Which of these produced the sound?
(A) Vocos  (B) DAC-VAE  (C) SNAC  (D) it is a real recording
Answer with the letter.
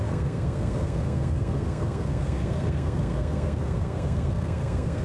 C